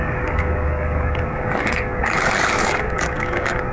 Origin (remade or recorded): remade